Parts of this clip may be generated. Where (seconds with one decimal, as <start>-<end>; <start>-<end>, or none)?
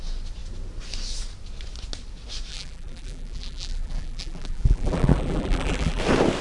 2.5-6.0